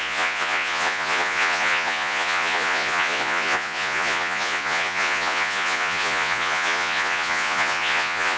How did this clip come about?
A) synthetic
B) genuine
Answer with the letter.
A